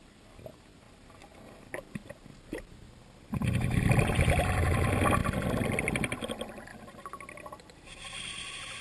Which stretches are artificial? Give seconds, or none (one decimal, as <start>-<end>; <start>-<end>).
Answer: none